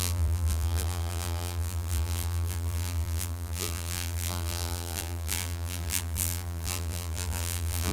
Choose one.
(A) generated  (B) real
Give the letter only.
A